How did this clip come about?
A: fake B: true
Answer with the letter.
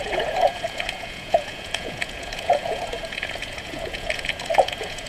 A